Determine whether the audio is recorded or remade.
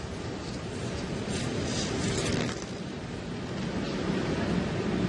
recorded